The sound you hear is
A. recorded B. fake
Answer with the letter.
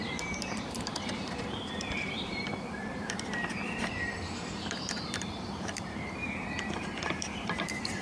B